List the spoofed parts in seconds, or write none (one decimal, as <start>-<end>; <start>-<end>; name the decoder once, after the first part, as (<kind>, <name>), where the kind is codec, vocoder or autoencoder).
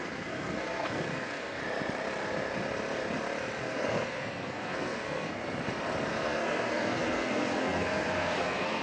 0.0-1.6 (codec, SNAC); 3.6-5.4; 6.1-8.8